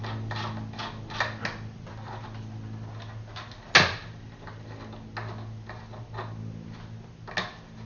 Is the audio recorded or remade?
recorded